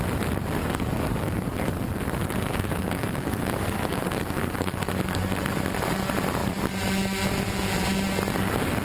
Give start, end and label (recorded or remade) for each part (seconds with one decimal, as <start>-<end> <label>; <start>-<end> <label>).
0.0-0.6 recorded; 0.6-1.7 remade; 1.7-2.2 recorded; 2.2-4.9 remade; 4.9-8.8 recorded